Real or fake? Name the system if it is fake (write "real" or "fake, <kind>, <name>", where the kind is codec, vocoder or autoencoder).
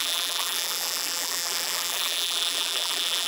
fake, vocoder, BigVGAN v2